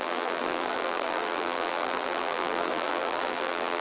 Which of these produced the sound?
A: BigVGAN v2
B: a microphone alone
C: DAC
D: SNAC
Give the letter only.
A